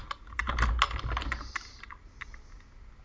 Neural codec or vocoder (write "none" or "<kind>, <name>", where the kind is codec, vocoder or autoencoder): none